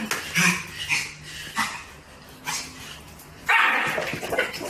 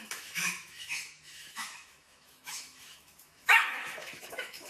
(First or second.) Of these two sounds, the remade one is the second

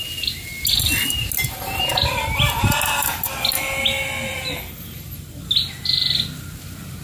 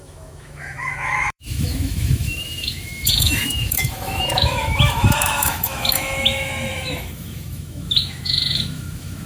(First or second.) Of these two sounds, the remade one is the second